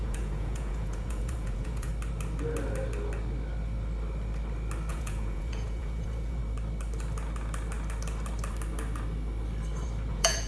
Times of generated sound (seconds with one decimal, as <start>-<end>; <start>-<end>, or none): 0.0-1.9; 4.9-6.4; 10.1-10.5